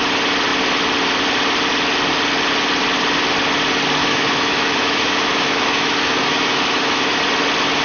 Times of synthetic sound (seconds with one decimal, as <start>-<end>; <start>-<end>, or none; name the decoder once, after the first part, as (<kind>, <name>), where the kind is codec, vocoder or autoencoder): 4.0-7.2 (autoencoder, DAC-VAE)